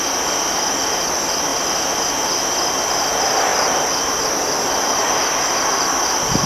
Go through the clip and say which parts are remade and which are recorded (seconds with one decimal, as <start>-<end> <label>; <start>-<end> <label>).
0.0-6.5 recorded